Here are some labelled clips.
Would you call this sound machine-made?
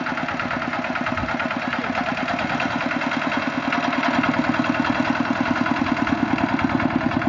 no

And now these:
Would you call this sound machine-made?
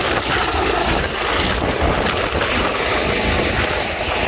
no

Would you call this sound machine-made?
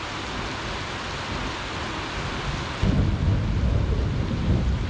no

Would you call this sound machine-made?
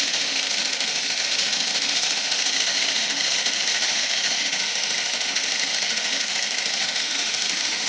yes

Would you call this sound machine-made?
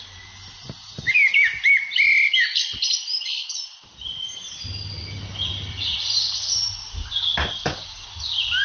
no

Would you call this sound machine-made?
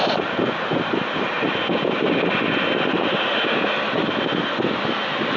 no